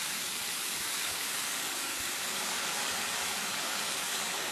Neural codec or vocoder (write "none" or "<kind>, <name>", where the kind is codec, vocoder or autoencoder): codec, DAC